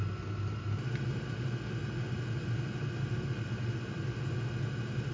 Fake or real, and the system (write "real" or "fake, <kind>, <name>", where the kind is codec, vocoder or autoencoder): real